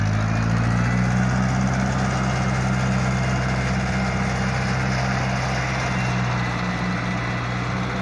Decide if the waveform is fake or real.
real